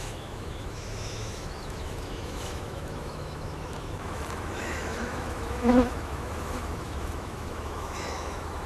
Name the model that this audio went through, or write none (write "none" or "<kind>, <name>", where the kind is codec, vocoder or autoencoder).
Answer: autoencoder, DAC-VAE